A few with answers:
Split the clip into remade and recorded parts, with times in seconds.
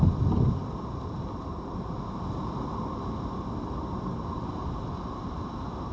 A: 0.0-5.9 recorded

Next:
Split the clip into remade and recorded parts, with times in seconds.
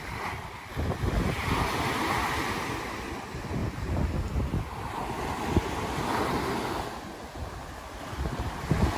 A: 0.0-9.0 recorded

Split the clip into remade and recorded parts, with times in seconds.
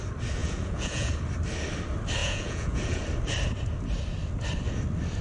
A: 0.0-0.4 recorded; 0.4-1.1 remade; 1.1-2.2 recorded; 2.2-3.0 remade; 3.0-5.2 recorded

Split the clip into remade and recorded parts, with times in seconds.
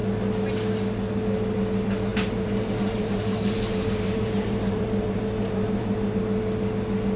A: 0.0-2.1 recorded; 2.1-6.2 remade; 6.2-7.2 recorded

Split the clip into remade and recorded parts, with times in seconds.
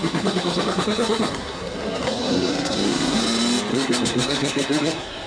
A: 0.0-3.2 remade; 3.2-3.7 recorded; 3.7-5.3 remade